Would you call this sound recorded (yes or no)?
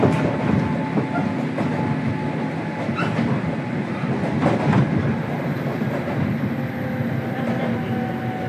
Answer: yes